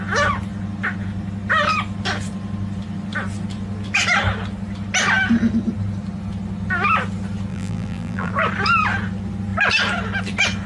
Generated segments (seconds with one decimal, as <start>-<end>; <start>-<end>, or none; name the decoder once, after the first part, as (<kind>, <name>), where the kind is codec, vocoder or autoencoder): 7.5-8.3 (vocoder, BigVGAN v2)